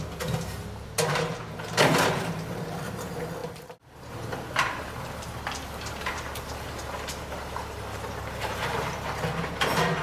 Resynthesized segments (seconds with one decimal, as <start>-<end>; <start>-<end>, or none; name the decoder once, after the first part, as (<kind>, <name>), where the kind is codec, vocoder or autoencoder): 0.0-10.0 (vocoder, BigVGAN v2)